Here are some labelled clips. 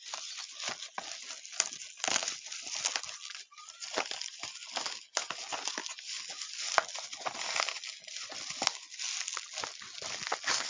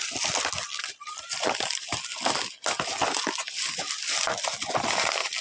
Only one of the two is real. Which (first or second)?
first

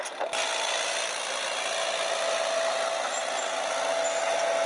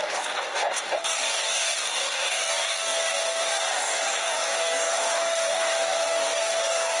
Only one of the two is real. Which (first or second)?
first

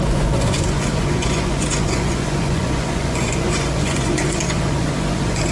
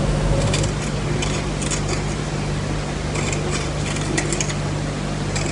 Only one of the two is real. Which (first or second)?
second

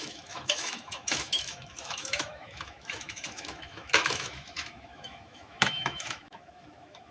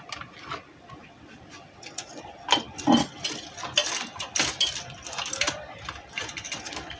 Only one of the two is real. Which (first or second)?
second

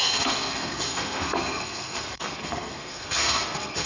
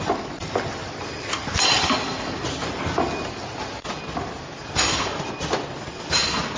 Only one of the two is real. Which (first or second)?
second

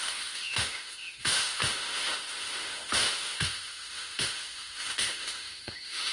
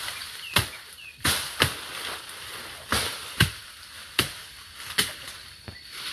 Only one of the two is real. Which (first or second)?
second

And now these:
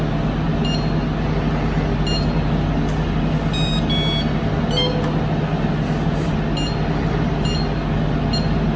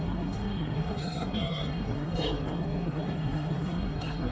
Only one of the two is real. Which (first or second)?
first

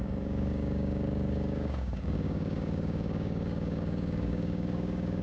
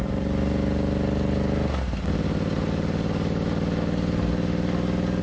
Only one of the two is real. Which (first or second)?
second